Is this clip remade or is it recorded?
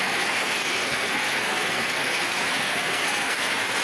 remade